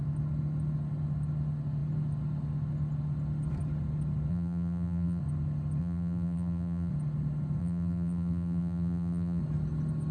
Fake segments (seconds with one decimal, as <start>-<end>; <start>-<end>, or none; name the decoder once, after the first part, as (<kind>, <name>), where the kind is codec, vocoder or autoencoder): 4.3-5.2 (vocoder, BigVGAN v2); 5.8-6.9; 7.6-9.4